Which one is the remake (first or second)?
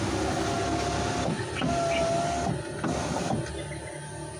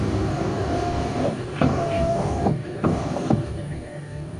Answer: second